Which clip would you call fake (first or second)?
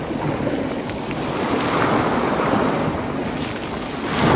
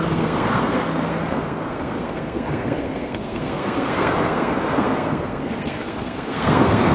second